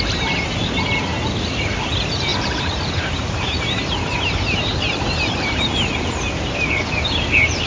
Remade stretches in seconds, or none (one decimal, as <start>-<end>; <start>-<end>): 2.3-5.7